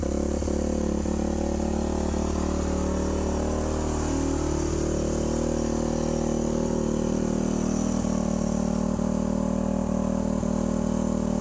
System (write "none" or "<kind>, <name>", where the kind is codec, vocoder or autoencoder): none